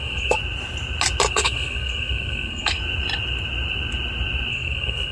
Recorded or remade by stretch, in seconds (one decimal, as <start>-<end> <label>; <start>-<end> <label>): 0.0-0.4 remade; 0.4-1.3 recorded; 1.3-2.8 remade; 2.8-4.5 recorded; 4.5-5.1 remade